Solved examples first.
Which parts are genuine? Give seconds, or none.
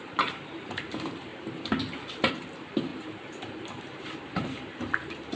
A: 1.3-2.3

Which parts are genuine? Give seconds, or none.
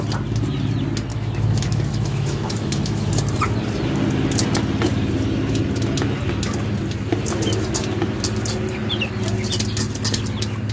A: 0.0-1.1; 3.1-10.7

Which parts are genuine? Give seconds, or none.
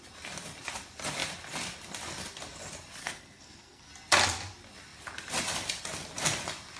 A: 0.0-3.0; 3.9-6.8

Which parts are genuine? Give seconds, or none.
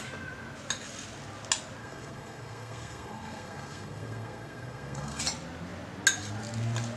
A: 0.0-1.8; 5.2-7.0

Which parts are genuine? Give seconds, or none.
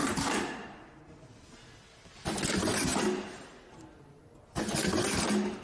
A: 1.0-5.6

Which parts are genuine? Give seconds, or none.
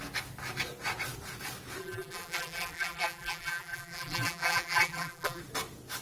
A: 0.0-1.8; 5.4-6.0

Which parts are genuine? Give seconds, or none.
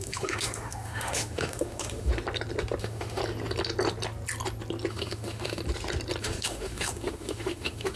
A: 2.1-2.8; 3.2-4.9; 5.6-6.2